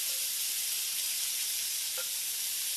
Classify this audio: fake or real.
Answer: real